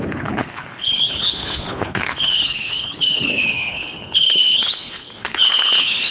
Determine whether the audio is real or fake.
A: fake